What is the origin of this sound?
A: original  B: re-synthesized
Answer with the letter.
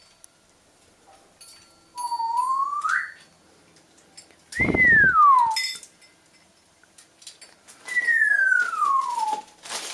A